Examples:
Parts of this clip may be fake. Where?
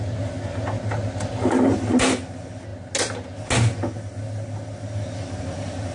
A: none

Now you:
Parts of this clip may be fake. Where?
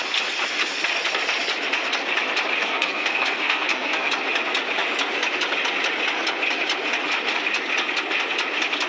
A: 2.6-4.1 (codec, SNAC)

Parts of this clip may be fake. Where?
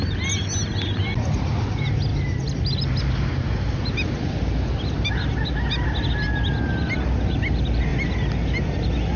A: none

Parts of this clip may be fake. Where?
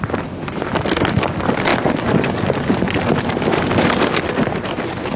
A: none